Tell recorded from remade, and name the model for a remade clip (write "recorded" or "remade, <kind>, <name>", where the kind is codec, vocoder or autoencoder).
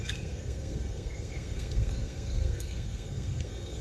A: remade, codec, SNAC